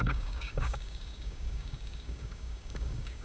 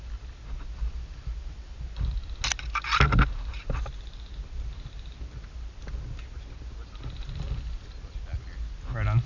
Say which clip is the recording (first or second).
second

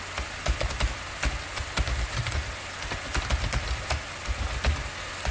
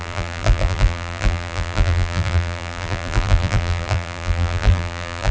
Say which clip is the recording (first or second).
first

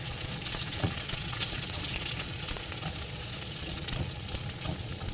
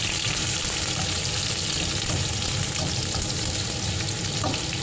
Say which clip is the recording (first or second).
second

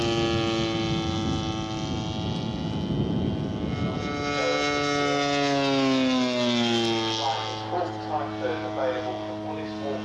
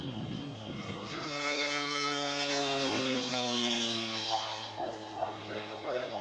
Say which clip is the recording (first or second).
first